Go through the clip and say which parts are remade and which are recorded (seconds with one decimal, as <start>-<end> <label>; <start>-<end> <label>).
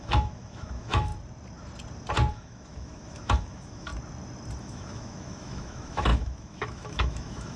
0.0-1.1 remade; 1.1-2.3 recorded; 2.3-3.9 remade; 3.9-4.6 recorded; 4.6-7.6 remade